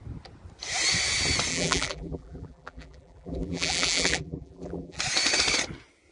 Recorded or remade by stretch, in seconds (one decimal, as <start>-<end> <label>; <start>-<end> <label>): 0.0-1.5 recorded; 1.5-5.0 remade; 5.0-6.1 recorded

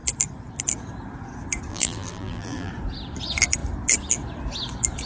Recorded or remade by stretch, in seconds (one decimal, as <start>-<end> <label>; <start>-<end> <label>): 0.0-1.7 recorded; 1.7-2.7 remade; 2.7-5.1 recorded

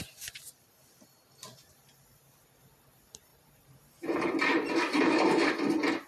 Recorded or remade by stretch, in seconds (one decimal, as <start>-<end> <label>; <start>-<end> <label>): 0.0-3.3 recorded; 3.3-5.5 remade; 5.5-6.1 recorded